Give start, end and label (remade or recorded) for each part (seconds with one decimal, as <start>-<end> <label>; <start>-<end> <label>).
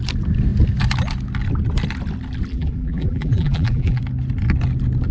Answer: 0.0-2.5 recorded; 2.5-4.0 remade; 4.0-5.1 recorded